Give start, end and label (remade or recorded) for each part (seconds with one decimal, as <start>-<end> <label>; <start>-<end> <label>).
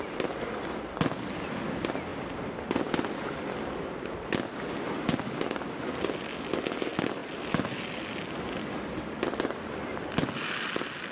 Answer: 0.0-11.1 recorded